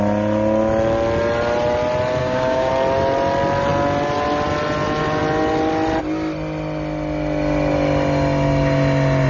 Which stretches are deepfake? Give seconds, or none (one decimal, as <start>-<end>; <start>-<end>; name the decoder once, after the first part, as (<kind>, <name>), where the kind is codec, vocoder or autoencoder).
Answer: 2.2-2.7 (codec, DAC)